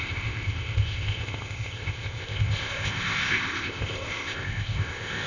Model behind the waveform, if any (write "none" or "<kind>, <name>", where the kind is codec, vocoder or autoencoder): codec, ZipCodec